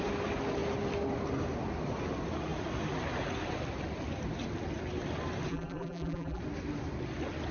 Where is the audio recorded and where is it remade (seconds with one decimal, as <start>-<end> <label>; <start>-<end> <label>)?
0.0-5.5 recorded; 5.5-6.4 remade; 6.4-7.5 recorded